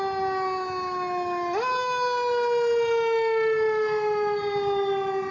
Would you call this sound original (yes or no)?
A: yes